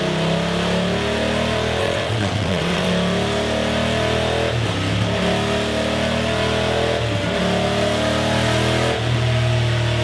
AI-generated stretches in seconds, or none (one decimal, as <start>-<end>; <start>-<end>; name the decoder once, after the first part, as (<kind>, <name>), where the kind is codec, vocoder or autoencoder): 1.8-2.9 (vocoder, WaveNeXt)